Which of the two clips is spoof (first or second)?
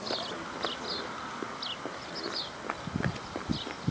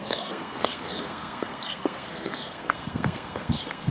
second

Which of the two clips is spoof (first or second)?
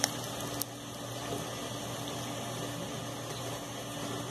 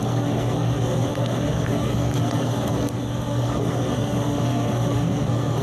second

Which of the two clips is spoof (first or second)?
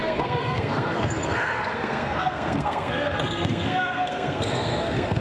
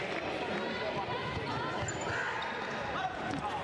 first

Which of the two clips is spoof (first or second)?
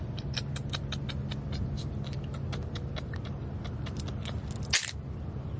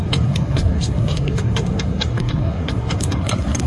second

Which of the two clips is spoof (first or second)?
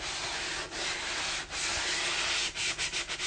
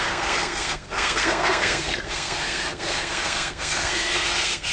second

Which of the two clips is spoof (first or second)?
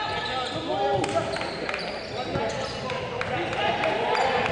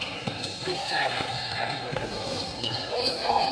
second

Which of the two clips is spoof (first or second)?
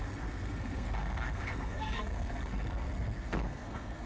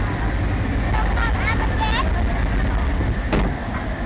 first